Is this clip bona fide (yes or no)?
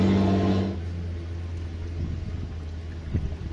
yes